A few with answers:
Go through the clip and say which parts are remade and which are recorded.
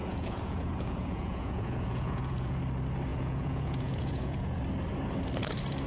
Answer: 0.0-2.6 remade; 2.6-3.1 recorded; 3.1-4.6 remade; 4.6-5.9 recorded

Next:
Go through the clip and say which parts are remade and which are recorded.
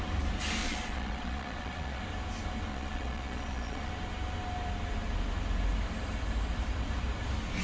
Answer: 0.0-0.6 recorded; 0.6-2.0 remade; 2.0-2.7 recorded; 2.7-3.9 remade; 3.9-7.6 recorded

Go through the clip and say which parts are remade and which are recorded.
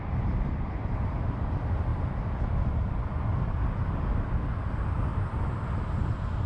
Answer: 0.0-6.5 recorded